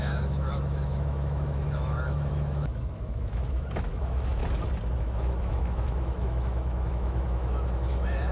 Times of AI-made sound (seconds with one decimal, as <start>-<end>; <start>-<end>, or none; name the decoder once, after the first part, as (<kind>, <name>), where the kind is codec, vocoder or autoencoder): 0.0-4.4 (autoencoder, DAC-VAE); 5.0-8.3